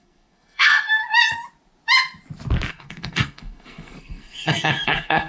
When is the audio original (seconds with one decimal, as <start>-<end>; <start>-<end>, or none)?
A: 1.0-2.7